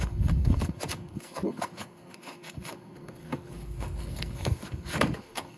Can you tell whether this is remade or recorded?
remade